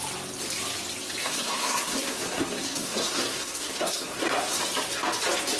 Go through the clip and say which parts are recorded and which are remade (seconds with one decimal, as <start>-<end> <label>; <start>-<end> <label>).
0.0-1.2 recorded; 1.2-4.6 remade; 4.6-5.6 recorded